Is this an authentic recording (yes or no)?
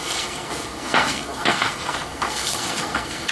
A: no